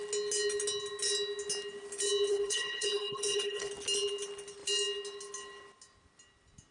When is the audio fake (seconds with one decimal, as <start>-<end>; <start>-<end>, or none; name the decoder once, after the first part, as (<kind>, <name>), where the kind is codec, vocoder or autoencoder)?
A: 2.3-3.7 (codec, HILCodec)